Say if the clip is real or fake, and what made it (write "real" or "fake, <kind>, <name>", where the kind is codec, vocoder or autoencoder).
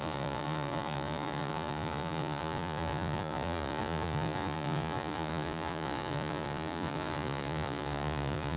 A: fake, vocoder, Vocos